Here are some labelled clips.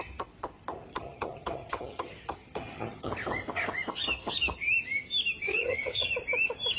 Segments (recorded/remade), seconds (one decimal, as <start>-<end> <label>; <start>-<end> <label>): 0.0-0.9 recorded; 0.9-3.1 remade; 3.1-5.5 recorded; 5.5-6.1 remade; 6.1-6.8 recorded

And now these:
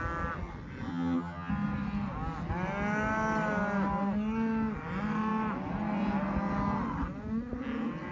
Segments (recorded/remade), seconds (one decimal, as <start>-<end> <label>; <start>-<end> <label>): 0.0-0.9 recorded; 0.9-1.5 remade; 1.5-8.1 recorded

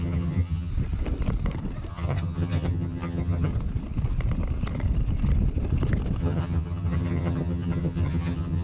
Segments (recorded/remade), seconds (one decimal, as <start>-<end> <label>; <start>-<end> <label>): 0.0-0.7 remade; 0.7-1.9 recorded; 1.9-3.5 remade; 3.5-6.2 recorded; 6.2-8.6 remade

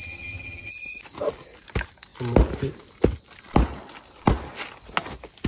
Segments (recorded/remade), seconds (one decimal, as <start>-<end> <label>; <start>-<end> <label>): 0.0-0.7 remade; 0.7-5.5 recorded